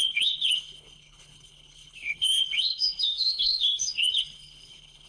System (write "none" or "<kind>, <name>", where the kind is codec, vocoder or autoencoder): codec, HILCodec